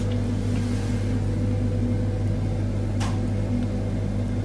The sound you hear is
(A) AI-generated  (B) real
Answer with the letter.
B